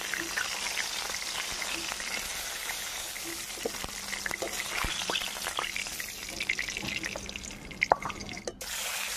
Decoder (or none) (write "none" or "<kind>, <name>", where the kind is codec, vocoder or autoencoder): none